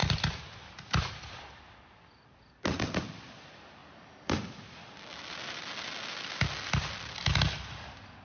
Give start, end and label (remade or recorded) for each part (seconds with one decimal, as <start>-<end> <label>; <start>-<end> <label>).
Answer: 0.0-1.6 remade; 1.6-8.2 recorded